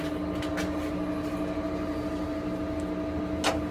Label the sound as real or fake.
real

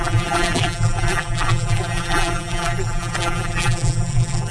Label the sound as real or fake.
fake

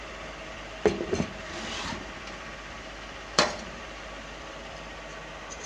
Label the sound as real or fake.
fake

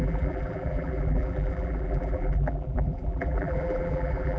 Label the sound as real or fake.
fake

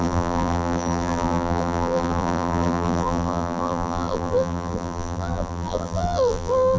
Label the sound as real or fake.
fake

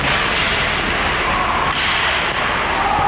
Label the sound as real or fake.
real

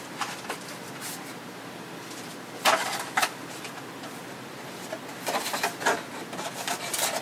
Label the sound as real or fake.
fake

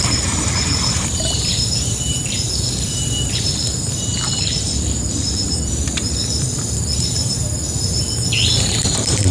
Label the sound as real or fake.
fake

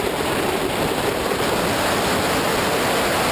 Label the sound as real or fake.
real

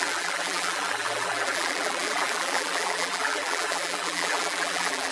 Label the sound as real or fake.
fake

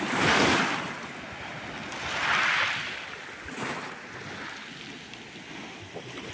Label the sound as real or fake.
real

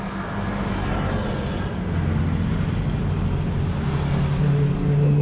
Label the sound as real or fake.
real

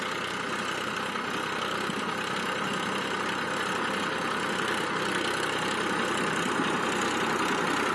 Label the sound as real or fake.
real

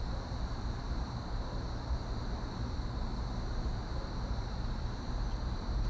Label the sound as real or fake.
fake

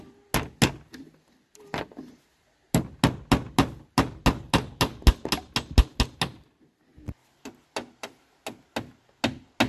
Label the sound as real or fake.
real